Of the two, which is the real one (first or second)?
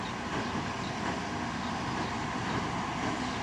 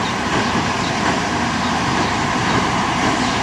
first